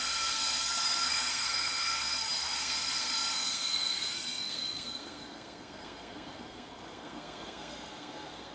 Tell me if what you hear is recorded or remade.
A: remade